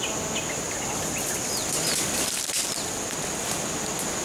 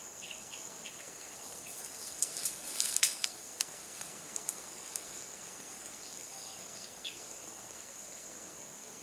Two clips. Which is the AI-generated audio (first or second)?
second